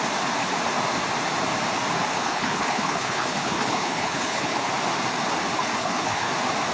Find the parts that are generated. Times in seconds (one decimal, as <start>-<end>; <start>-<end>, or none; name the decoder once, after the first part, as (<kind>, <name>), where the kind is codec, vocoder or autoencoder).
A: 2.1-4.7 (codec, HILCodec); 5.8-6.3